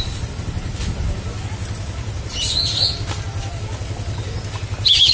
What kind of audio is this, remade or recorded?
recorded